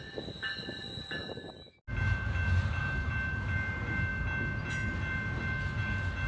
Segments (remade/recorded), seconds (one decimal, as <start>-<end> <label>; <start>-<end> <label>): 0.0-6.3 recorded